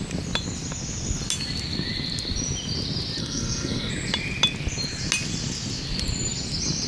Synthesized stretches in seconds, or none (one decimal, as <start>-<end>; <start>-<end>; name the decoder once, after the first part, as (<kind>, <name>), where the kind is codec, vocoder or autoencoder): 3.2-3.9 (codec, SNAC)